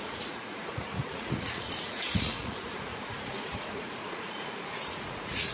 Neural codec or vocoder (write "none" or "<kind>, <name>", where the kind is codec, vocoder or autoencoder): vocoder, Vocos